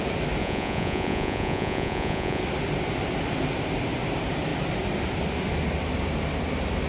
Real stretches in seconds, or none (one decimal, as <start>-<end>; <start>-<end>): 0.0-0.4; 2.4-6.9